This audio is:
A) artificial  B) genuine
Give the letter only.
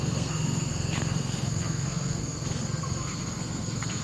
A